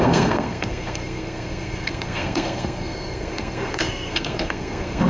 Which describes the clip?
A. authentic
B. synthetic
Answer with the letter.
B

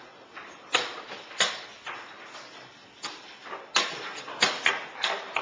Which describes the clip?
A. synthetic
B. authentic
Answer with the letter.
B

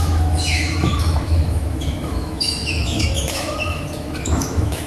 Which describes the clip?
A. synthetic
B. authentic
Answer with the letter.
A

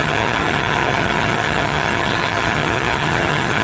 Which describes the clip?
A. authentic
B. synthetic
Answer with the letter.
B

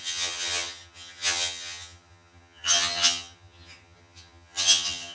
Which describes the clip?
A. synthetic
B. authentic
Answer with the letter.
A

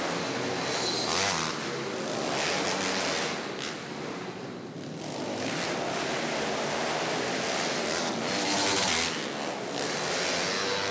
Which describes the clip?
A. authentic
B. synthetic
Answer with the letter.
A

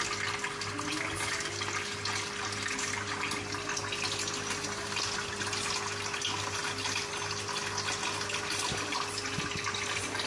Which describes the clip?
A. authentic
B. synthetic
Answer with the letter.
A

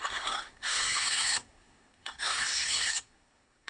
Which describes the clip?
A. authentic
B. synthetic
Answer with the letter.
B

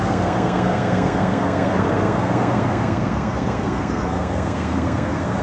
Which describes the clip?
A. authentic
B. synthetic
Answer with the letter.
B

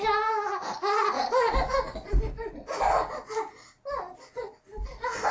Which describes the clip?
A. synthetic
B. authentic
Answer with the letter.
B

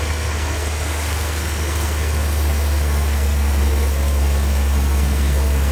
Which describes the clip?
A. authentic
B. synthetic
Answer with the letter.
B